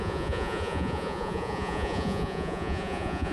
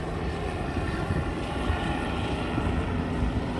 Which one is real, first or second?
second